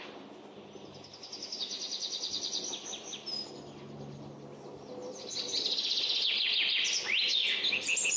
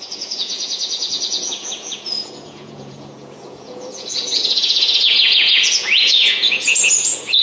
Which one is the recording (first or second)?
first